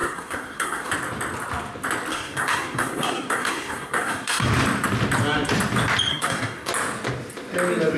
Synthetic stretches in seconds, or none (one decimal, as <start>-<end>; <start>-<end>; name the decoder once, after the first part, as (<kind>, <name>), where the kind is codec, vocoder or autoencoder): 0.0-0.9 (codec, SNAC); 2.1-4.5; 6.1-6.7